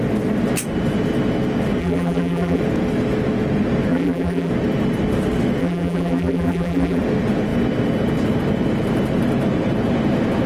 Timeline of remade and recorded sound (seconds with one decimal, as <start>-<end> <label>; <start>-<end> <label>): 0.0-1.8 recorded; 1.8-2.6 remade; 2.6-3.9 recorded; 3.9-4.5 remade; 4.5-5.6 recorded; 5.6-7.0 remade; 7.0-10.5 recorded